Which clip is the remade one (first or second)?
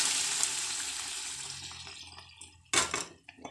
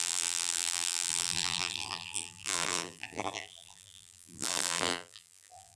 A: second